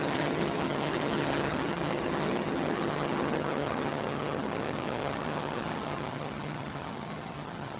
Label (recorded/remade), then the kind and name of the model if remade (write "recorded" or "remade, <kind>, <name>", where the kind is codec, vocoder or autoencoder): remade, vocoder, HiFi-GAN